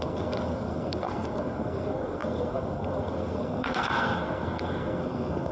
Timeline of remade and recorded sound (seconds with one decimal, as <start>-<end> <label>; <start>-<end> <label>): 0.0-5.5 remade